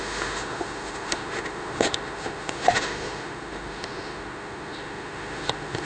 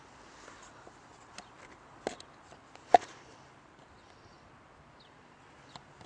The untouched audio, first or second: second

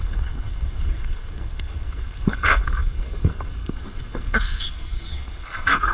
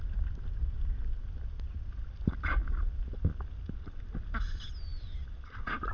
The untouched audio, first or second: second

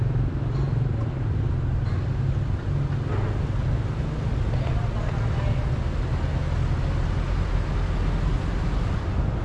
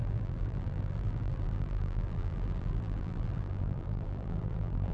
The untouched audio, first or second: first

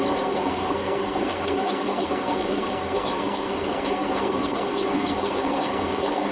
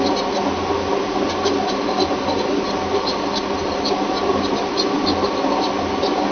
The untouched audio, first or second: second